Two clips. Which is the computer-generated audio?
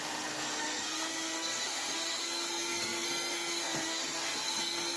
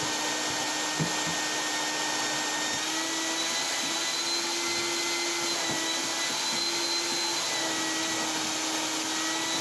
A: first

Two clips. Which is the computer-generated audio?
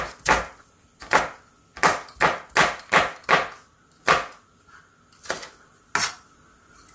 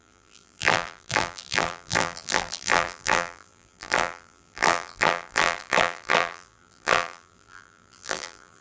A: second